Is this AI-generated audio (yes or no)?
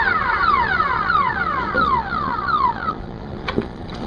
yes